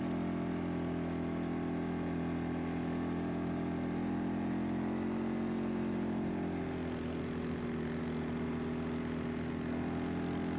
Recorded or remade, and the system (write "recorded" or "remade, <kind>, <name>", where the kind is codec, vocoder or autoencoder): recorded